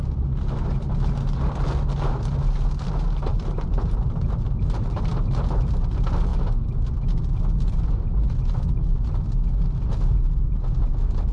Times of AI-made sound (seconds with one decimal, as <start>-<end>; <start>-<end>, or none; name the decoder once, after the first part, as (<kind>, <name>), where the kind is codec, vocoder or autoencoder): 3.3-5.1 (vocoder, BigVGAN v2)